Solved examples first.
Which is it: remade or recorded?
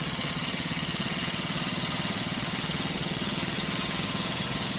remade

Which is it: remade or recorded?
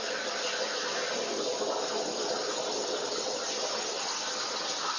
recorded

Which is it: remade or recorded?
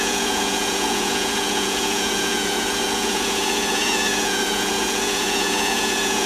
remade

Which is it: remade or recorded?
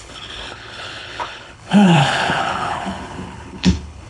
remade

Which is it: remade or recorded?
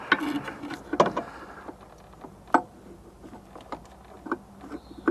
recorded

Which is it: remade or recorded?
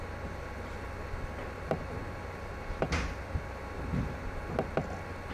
recorded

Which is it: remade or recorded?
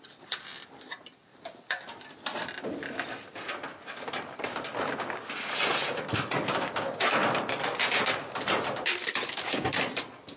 recorded